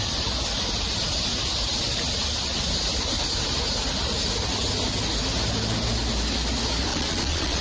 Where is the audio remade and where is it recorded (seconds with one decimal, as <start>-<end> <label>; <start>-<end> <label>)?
0.0-6.9 recorded; 6.9-7.6 remade